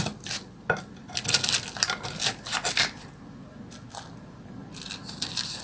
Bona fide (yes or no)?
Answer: yes